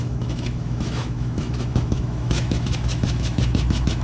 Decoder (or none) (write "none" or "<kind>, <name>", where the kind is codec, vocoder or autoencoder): autoencoder, DAC-VAE